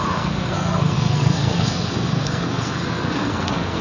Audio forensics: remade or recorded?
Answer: remade